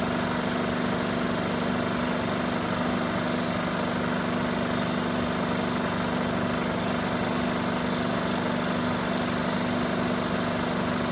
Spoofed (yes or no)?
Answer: no